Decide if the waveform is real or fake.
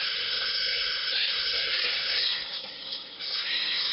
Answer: fake